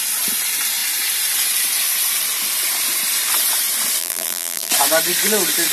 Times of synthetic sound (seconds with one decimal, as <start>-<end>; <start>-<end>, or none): 4.0-4.7